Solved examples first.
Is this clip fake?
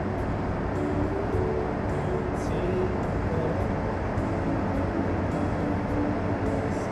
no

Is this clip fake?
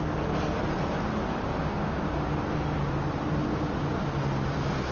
no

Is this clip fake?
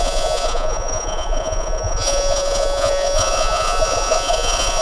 yes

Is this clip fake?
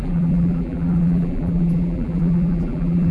yes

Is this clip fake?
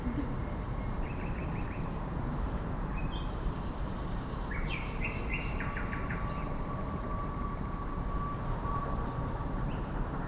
yes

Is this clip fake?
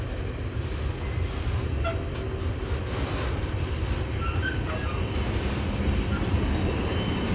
no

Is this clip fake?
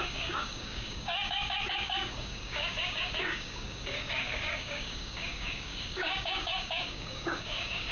yes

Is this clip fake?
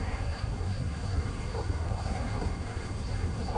yes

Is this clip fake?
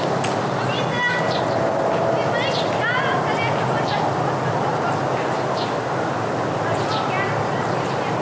no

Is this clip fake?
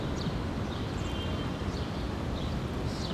yes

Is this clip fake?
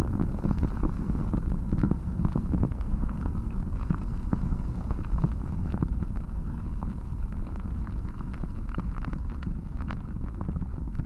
yes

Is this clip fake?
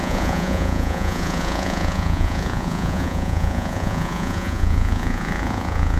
yes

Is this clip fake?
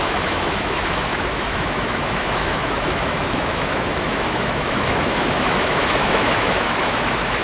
yes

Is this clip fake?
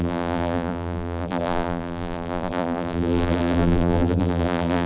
yes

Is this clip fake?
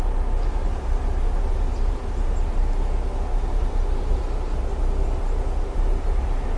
no